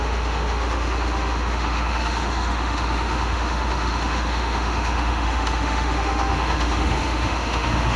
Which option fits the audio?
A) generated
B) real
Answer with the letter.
A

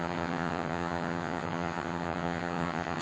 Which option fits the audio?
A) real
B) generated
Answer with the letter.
B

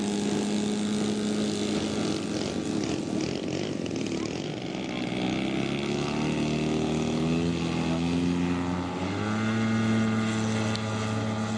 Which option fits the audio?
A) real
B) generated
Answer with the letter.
A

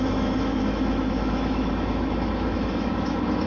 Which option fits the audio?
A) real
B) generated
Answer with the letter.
B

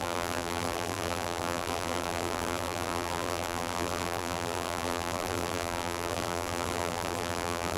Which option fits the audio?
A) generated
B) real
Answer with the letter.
A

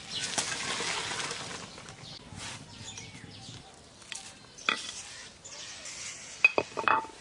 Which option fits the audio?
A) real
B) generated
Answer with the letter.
A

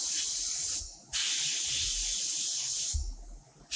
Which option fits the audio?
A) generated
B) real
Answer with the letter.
B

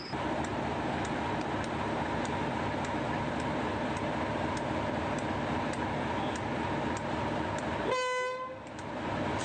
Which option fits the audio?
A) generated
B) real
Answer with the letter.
B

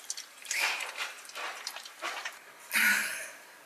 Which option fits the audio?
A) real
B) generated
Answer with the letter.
B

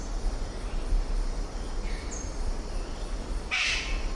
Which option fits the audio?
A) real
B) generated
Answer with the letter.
A